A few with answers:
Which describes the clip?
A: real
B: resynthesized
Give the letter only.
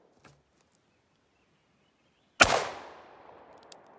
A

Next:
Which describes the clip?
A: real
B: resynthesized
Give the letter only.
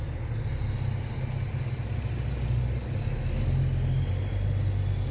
A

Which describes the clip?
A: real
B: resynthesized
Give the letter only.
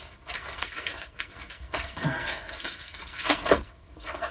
B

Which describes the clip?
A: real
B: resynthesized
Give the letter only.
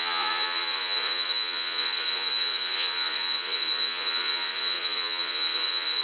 B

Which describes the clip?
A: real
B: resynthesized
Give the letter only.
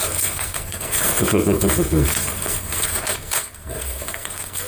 B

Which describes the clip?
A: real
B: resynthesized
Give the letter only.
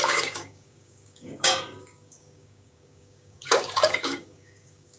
B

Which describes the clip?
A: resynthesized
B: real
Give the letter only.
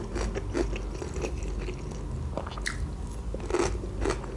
B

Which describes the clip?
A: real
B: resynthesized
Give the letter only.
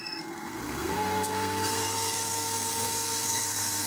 B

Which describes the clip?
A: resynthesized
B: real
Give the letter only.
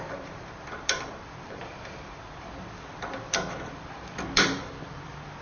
A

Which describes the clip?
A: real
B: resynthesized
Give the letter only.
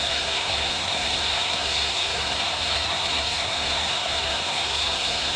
B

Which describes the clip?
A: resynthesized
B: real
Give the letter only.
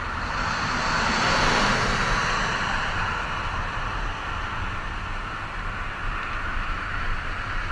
B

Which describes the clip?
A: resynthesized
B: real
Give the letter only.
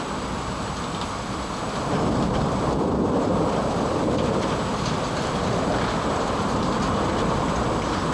A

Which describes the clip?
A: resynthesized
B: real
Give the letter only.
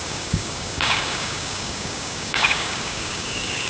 A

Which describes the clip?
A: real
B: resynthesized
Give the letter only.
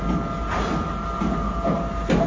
A